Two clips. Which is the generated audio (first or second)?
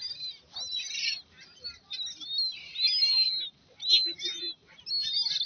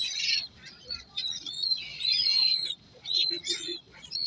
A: second